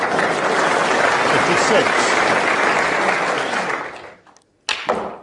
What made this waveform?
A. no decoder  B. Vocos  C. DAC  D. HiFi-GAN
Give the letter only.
A